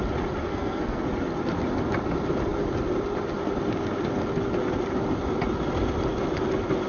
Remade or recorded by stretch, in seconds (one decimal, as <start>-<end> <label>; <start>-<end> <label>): 0.0-0.5 recorded; 0.5-1.0 remade; 1.0-6.9 recorded